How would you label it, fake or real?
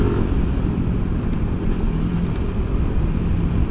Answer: real